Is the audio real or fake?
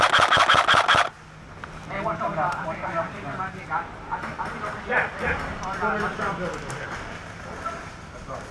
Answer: real